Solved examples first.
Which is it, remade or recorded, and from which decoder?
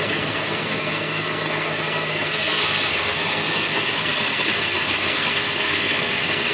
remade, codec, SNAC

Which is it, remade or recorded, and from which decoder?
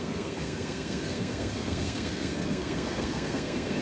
remade, codec, SNAC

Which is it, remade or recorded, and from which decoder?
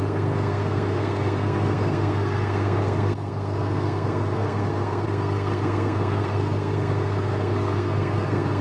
remade, codec, SNAC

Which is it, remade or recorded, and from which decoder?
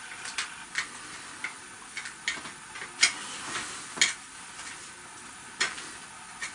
recorded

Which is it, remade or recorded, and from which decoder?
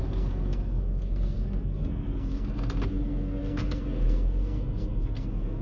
remade, codec, SNAC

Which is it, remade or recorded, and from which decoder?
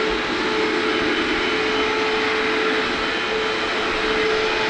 recorded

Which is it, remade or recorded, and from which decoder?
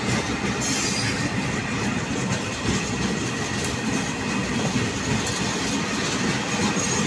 recorded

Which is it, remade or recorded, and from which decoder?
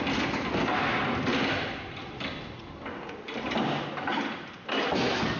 recorded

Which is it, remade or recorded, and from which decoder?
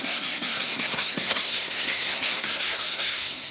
remade, codec, SNAC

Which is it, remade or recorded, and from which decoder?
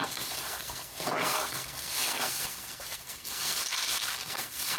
remade, codec, SNAC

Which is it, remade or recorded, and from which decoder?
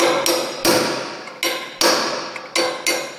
recorded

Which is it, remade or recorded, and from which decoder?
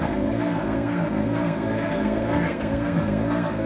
remade, codec, SNAC